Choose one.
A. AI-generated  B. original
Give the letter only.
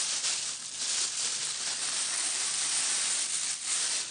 A